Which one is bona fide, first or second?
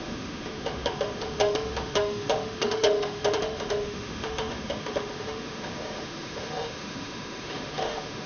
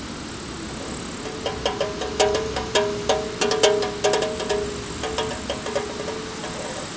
second